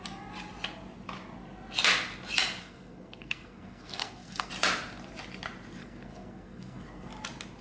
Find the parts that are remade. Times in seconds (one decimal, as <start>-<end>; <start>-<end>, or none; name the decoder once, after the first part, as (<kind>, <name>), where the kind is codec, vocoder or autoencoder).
2.6-4.5 (codec, SNAC); 5.8-7.1